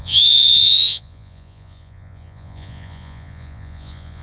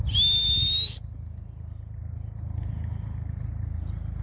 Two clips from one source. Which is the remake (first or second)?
first